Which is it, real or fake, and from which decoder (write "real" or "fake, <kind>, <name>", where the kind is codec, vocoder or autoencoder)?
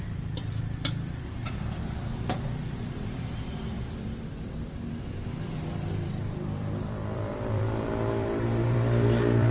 fake, vocoder, BigVGAN v2